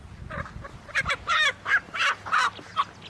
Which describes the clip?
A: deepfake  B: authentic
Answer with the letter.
B